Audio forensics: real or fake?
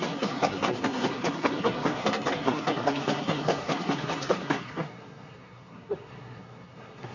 fake